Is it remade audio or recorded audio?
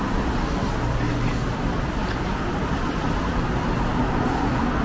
recorded